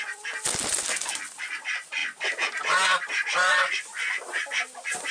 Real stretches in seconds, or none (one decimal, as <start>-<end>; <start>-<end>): 0.0-5.1